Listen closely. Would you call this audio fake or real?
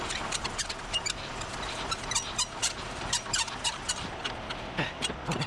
real